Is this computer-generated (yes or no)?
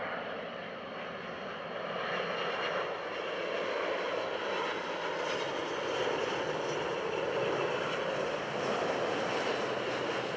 no